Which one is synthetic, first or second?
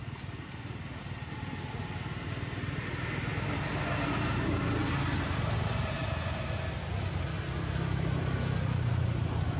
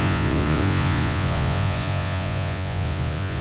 second